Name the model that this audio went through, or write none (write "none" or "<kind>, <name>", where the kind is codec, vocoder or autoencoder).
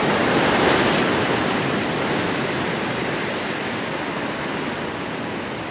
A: none